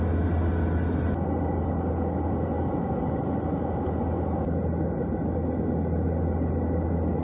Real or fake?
real